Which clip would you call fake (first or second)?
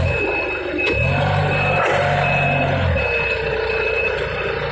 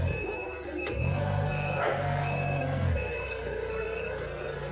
second